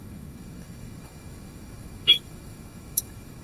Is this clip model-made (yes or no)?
yes